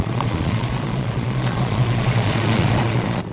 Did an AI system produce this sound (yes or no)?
yes